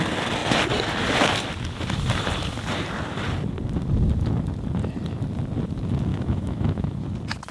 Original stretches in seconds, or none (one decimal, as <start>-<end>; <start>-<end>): 0.0-6.1; 7.0-7.5